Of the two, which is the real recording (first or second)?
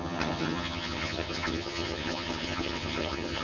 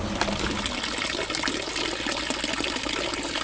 second